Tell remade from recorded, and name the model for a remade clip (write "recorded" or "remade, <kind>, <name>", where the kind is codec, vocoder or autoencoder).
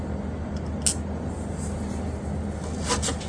recorded